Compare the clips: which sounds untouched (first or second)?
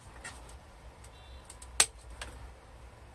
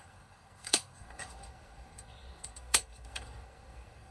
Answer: first